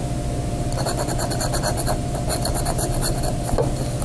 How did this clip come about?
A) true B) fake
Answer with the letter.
A